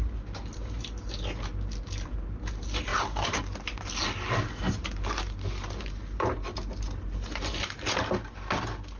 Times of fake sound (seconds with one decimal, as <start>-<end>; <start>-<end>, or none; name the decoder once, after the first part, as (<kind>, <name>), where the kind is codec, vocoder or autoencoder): none